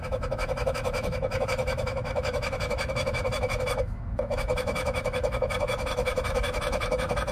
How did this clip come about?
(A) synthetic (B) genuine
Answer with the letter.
A